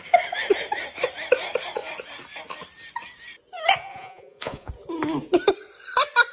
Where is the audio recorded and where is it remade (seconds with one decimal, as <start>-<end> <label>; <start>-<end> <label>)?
0.0-3.9 recorded; 3.9-4.7 remade; 4.7-6.3 recorded